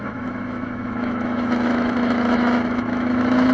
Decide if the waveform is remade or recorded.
remade